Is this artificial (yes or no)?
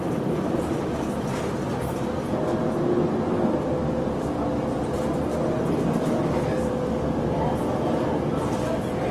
no